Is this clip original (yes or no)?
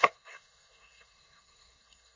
no